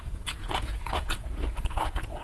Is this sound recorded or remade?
remade